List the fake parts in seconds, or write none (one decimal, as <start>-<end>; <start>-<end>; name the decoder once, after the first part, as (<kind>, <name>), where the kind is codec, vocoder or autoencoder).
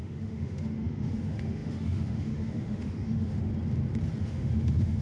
0.0-3.5 (autoencoder, DAC-VAE); 4.2-5.0